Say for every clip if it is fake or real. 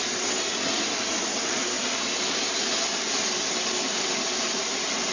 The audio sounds real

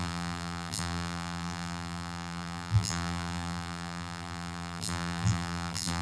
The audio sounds fake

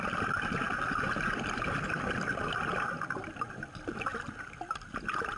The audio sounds real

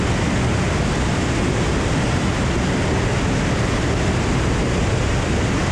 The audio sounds real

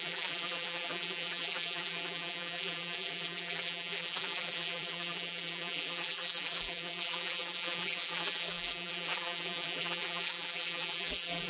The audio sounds fake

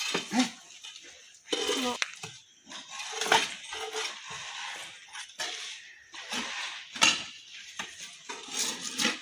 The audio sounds real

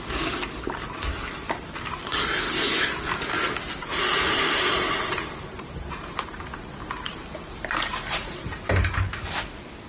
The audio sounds real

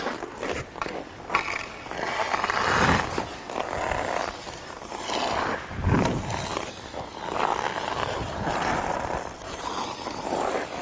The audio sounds real